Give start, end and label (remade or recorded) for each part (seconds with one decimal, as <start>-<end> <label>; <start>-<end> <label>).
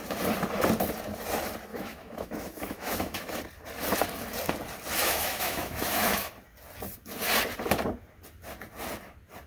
0.0-1.7 recorded; 1.7-3.4 remade; 3.4-5.0 recorded; 5.0-6.3 remade; 6.3-9.5 recorded